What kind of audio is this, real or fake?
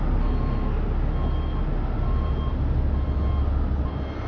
real